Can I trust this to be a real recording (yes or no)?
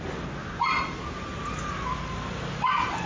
yes